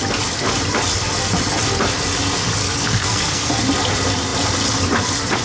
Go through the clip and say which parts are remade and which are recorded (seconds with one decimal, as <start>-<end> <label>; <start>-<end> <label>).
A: 0.0-2.6 recorded; 2.6-3.5 remade; 3.5-5.4 recorded